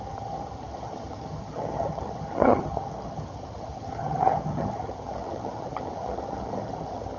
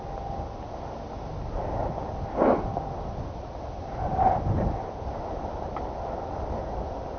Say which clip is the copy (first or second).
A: first